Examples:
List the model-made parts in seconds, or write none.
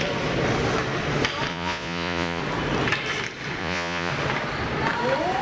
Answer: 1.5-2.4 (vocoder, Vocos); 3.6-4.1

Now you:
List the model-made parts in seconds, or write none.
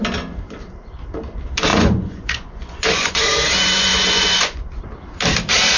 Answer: 1.7-4.6 (vocoder, Vocos)